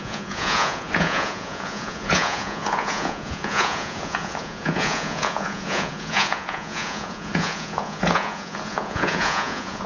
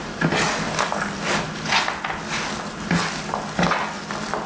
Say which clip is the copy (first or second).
first